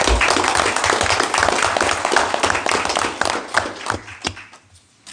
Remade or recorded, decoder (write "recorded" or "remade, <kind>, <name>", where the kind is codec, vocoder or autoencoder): recorded